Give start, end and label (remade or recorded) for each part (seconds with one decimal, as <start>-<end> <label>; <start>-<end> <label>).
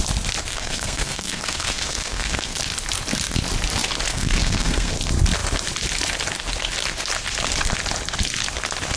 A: 0.0-0.5 recorded; 0.5-2.6 remade; 2.6-4.1 recorded; 4.1-4.9 remade; 4.9-9.0 recorded